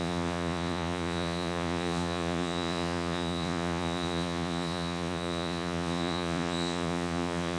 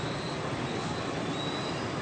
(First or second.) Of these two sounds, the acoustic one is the second